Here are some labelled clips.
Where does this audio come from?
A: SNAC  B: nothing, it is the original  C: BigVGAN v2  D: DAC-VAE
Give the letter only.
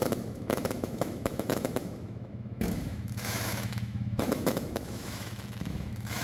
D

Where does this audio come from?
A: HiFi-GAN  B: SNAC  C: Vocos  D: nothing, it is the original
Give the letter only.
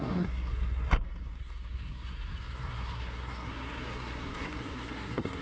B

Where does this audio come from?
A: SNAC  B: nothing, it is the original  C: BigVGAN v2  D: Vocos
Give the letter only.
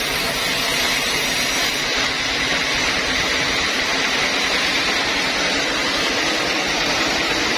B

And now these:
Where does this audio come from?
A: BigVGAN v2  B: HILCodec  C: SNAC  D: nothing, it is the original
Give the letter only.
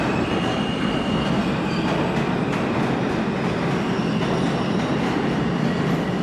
D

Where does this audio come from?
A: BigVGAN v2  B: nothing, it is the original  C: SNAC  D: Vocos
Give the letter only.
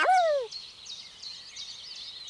B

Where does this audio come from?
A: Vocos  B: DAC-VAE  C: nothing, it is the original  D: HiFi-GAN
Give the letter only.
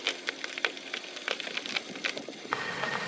C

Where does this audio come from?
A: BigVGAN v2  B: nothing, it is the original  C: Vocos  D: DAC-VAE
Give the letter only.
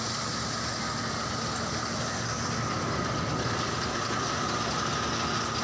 B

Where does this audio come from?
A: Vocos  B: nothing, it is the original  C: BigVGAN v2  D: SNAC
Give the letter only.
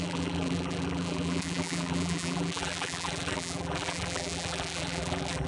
C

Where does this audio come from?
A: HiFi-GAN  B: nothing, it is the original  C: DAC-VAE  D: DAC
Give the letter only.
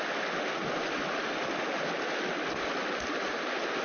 B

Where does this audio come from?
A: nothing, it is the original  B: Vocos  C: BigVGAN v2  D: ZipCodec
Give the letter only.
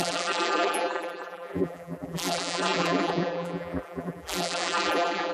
C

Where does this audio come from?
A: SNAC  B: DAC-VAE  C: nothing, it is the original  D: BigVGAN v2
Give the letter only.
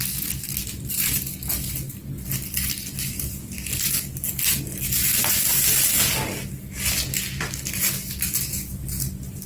C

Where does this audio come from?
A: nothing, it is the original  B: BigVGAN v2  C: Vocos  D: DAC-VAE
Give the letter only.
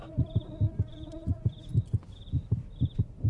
A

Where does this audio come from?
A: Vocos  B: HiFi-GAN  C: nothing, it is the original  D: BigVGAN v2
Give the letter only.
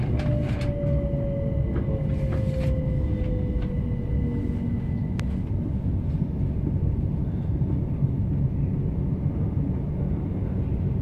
C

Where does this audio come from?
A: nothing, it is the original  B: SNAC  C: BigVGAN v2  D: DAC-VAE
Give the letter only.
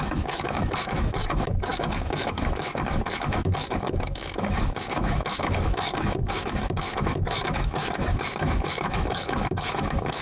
D